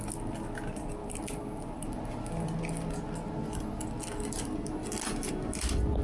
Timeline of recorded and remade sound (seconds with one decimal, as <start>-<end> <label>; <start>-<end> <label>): 0.0-1.0 recorded; 1.0-1.6 remade; 1.6-6.0 recorded